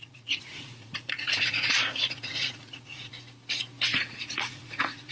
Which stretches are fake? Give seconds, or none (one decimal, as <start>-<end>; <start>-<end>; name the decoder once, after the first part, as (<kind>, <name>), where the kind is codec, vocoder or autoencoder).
0.0-3.1 (vocoder, Vocos); 3.9-5.1